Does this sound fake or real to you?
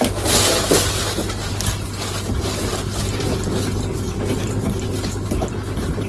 real